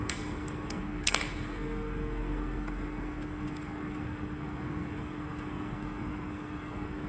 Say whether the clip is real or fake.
fake